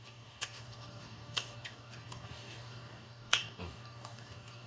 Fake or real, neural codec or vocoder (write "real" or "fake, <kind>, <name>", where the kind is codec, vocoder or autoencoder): fake, codec, DAC